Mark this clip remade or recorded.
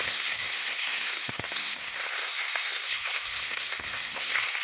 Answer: remade